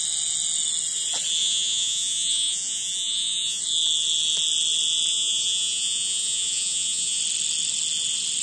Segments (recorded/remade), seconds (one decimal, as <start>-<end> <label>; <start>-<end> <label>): 0.0-1.4 recorded; 1.4-3.6 remade; 3.6-5.1 recorded; 5.1-7.2 remade; 7.2-8.4 recorded